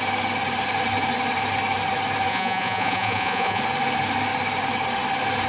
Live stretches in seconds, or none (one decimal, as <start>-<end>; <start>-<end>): 0.0-2.3; 3.6-5.5